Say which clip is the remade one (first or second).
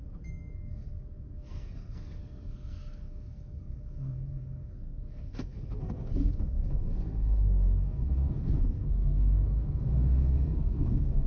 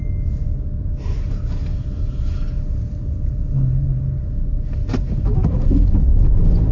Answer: first